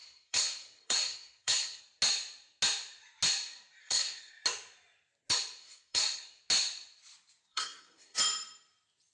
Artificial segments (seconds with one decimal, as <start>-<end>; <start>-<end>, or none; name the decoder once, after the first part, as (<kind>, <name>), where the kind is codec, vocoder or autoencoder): 0.0-1.8 (codec, SNAC); 3.8-4.3; 5.6-6.4; 7.5-8.2